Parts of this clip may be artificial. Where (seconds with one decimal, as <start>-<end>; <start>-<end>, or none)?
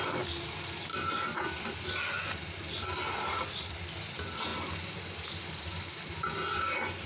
none